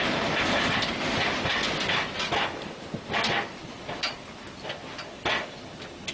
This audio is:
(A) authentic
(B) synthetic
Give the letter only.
A